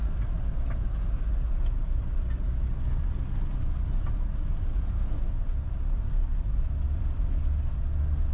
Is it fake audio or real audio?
real